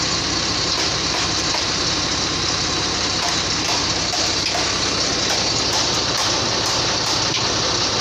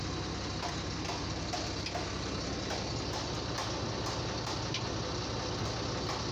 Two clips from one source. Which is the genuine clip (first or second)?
second